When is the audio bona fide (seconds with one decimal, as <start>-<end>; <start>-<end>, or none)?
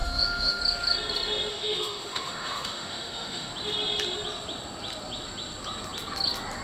0.6-1.5; 3.5-6.6